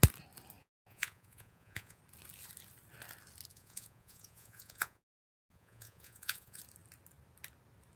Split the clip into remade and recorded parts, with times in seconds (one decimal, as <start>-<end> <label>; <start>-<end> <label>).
0.0-0.6 recorded; 0.6-2.0 remade; 2.0-3.5 recorded; 3.5-6.6 remade; 6.6-8.0 recorded